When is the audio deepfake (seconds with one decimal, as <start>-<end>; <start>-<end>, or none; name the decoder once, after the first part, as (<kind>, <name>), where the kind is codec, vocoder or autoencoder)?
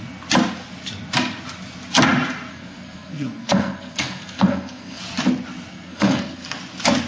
2.5-5.0 (codec, SNAC); 5.7-6.6